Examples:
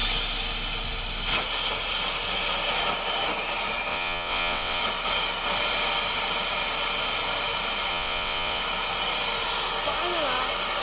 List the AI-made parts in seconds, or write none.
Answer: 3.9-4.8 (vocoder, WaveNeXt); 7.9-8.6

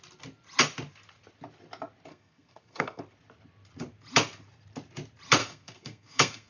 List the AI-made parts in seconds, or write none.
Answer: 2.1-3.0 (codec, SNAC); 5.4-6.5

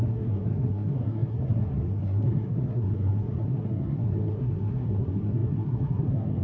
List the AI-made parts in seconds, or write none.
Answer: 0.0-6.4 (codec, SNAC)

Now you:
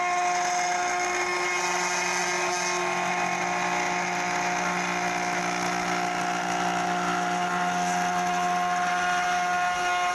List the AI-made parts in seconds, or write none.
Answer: none

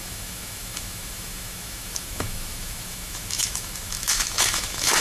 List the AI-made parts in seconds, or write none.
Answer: 0.0-5.0 (autoencoder, DAC-VAE)